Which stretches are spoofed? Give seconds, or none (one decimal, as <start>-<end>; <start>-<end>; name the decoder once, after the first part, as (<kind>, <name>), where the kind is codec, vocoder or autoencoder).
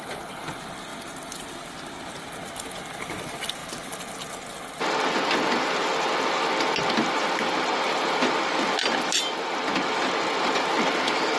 none